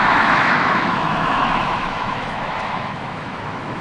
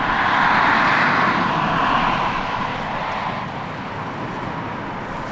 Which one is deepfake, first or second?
first